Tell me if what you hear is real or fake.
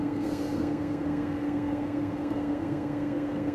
fake